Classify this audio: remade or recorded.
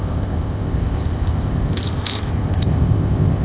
remade